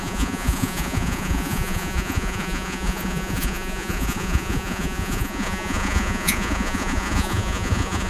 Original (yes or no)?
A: no